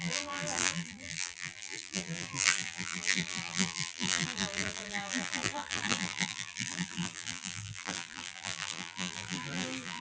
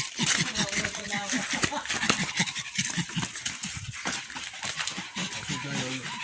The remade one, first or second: first